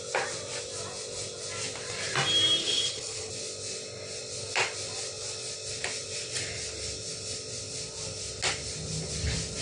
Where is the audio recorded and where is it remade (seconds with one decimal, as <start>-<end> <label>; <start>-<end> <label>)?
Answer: 0.0-2.6 recorded; 2.6-3.3 remade; 3.3-9.6 recorded